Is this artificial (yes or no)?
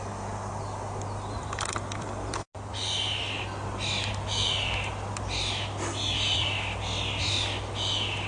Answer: no